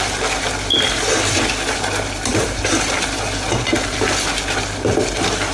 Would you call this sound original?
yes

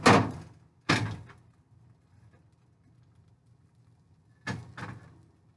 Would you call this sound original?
yes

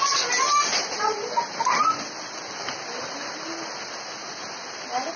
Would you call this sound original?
yes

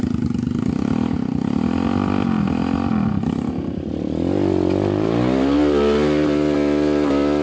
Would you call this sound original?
yes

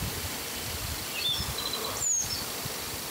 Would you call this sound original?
yes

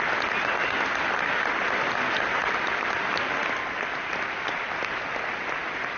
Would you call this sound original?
yes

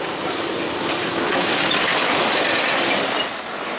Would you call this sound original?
yes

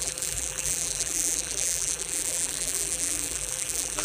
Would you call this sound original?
no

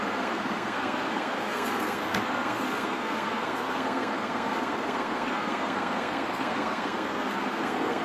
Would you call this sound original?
no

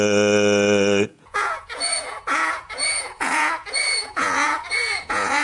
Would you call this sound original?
no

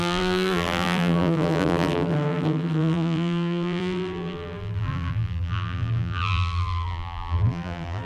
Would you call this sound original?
no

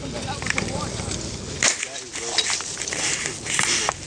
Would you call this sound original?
yes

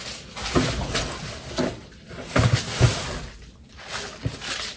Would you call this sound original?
yes